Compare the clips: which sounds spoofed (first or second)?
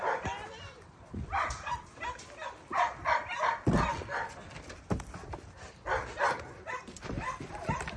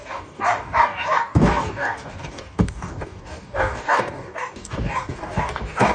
second